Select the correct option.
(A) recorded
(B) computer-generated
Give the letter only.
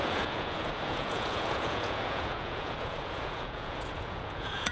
B